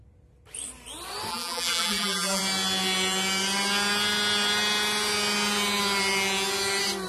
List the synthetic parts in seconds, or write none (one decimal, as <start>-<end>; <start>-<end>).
1.3-2.4